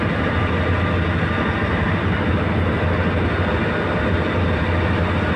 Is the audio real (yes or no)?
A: yes